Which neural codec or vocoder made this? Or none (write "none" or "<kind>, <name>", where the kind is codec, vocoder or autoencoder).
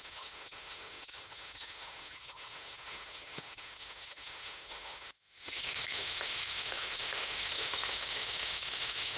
autoencoder, DAC-VAE